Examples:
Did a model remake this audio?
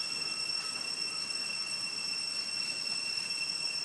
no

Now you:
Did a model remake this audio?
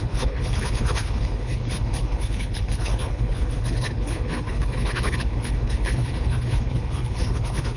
yes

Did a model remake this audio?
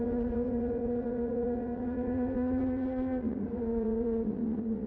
yes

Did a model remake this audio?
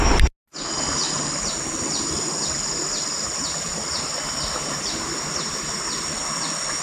no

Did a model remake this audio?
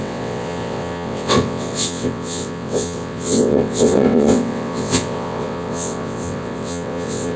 yes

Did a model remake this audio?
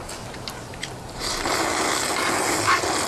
no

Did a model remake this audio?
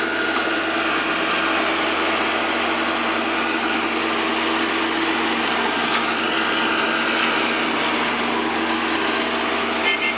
no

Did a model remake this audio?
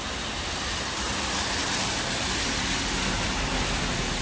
no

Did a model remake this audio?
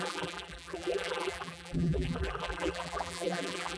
yes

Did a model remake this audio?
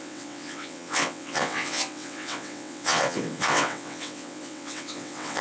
yes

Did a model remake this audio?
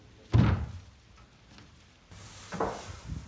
no